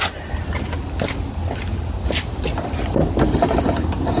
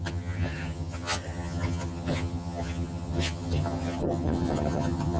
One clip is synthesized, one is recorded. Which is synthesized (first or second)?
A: second